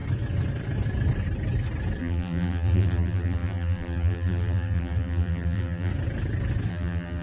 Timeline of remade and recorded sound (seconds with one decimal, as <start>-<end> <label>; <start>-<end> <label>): 0.0-2.0 recorded; 2.0-5.9 remade; 5.9-6.7 recorded; 6.7-7.2 remade